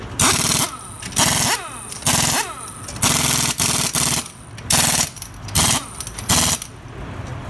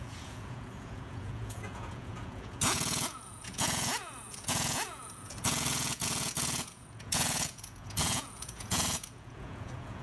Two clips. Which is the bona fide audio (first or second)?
first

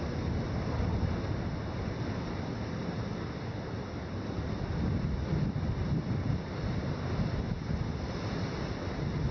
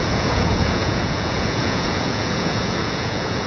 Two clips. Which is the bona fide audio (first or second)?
first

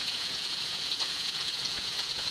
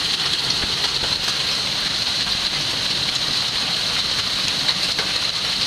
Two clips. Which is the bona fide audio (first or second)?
second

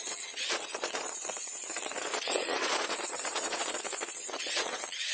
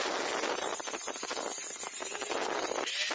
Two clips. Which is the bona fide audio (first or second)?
second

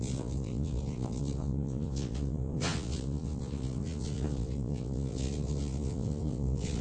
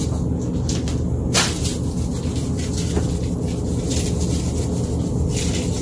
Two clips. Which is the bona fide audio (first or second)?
second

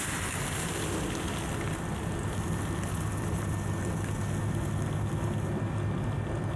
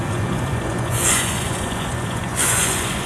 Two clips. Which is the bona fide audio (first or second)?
first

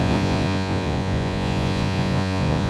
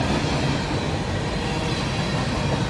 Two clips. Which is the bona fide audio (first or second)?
second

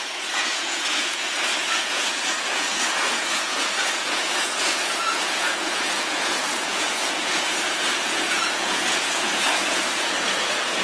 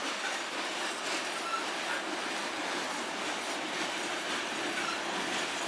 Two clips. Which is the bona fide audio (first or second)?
second